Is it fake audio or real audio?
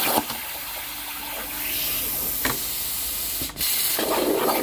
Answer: real